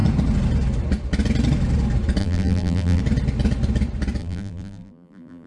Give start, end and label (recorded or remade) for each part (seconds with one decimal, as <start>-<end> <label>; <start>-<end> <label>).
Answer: 0.0-2.2 recorded; 2.2-3.0 remade; 3.0-4.2 recorded; 4.2-5.5 remade